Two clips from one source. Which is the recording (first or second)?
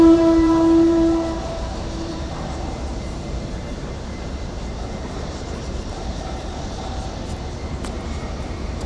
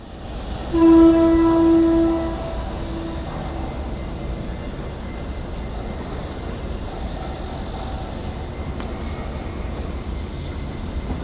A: second